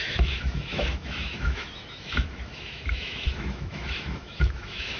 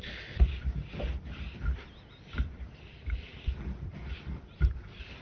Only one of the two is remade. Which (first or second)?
first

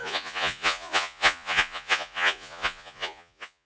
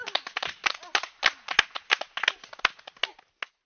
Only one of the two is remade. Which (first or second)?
first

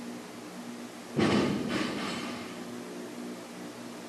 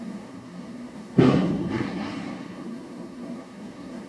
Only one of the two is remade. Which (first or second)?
second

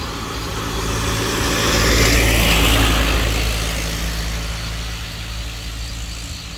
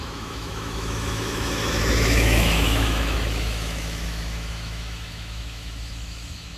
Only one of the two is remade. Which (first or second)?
second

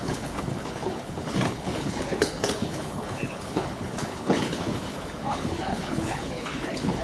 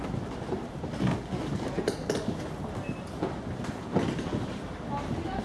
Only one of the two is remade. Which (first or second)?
first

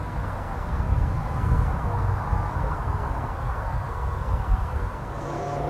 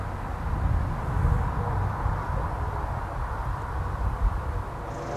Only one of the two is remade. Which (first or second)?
first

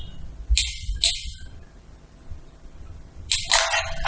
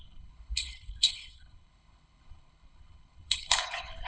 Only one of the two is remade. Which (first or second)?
second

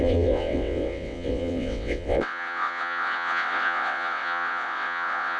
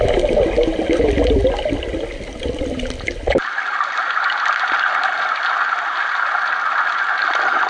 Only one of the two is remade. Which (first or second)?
first